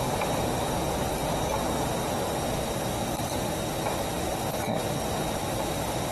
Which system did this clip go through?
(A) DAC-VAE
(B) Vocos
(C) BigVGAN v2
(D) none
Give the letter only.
C